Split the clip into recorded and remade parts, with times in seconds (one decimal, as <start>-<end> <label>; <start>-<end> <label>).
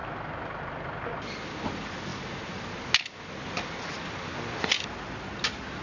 0.0-5.8 recorded